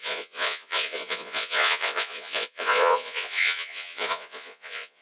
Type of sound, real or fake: fake